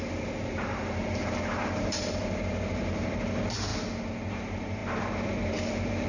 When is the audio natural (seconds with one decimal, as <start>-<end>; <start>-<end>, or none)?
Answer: 2.2-2.7; 3.7-4.3

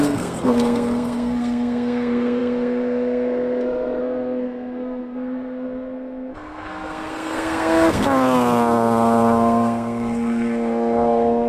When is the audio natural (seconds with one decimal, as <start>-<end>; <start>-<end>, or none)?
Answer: none

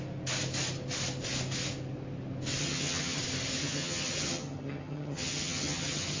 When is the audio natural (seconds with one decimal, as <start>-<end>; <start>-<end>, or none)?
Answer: 0.0-2.6; 3.2-3.6

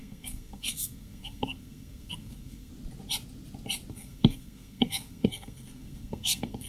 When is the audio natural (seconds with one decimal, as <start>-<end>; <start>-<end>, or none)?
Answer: 2.7-3.9